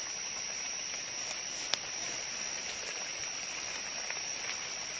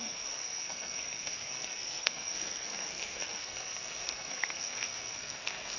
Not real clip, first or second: second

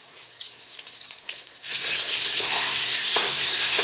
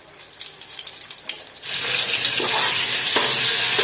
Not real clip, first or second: first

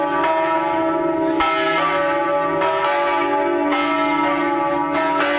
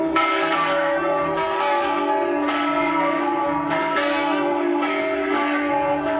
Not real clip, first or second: second